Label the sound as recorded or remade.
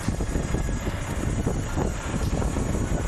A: recorded